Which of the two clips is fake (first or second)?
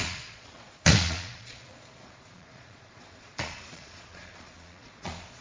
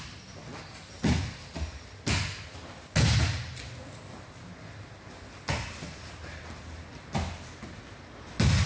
first